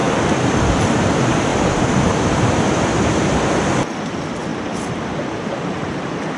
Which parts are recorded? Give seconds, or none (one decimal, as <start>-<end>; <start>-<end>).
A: 0.6-1.5; 2.7-4.5; 5.7-6.4